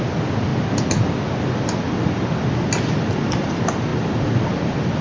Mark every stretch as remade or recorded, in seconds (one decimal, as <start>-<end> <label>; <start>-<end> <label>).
0.0-5.0 recorded